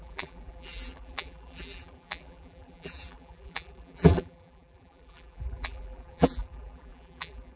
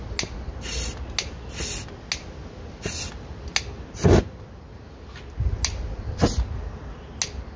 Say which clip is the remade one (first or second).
first